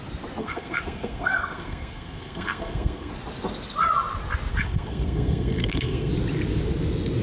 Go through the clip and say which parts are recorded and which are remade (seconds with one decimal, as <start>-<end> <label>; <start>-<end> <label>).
0.0-0.4 recorded; 0.4-3.1 remade; 3.1-4.5 recorded; 4.5-6.1 remade; 6.1-7.2 recorded